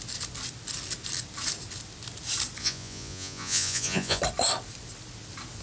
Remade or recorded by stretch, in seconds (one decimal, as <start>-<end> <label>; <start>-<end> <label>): 0.0-2.6 recorded; 2.6-4.2 remade; 4.2-5.6 recorded